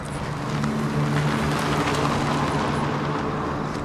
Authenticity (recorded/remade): recorded